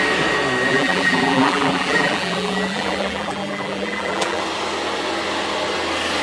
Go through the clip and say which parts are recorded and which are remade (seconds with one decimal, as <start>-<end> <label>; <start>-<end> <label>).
0.0-0.7 recorded; 0.7-4.4 remade; 4.4-6.2 recorded